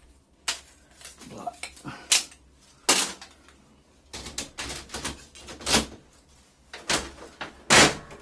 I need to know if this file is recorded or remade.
recorded